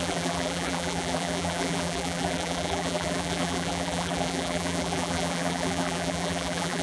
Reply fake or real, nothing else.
fake